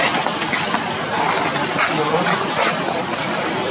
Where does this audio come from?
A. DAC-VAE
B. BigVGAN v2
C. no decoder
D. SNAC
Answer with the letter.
C